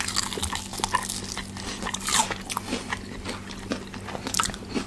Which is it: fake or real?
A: real